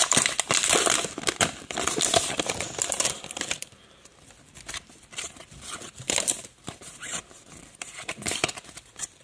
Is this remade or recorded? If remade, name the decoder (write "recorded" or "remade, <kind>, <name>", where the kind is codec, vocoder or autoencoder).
remade, vocoder, BigVGAN v2